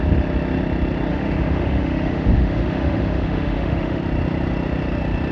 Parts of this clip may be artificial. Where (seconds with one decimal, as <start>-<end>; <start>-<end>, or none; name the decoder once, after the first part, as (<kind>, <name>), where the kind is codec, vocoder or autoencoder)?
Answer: 1.1-4.0 (autoencoder, DAC-VAE)